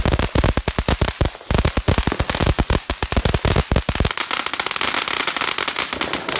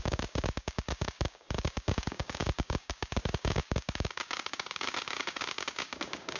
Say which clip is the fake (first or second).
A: second